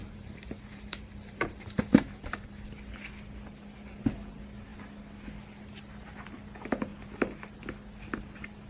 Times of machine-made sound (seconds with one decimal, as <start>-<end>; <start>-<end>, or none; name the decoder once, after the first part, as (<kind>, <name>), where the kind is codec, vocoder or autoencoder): 0.0-2.7 (vocoder, BigVGAN v2)